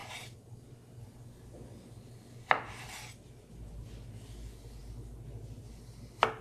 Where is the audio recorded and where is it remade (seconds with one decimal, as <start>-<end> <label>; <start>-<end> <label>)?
0.0-6.4 recorded